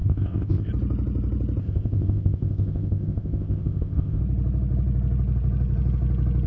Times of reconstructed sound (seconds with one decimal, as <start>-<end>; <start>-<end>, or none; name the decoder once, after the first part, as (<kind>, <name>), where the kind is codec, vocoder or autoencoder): 0.0-0.7 (codec, ZipCodec); 1.6-4.2